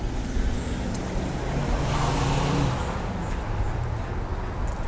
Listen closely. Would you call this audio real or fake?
real